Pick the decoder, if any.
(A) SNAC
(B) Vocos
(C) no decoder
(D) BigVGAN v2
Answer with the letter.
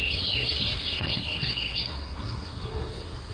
A